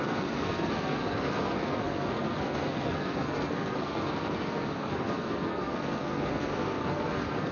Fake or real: fake